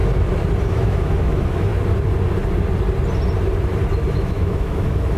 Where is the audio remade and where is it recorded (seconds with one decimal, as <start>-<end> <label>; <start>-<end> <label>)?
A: 0.0-0.7 recorded; 0.7-1.7 remade; 1.7-4.1 recorded; 4.1-5.2 remade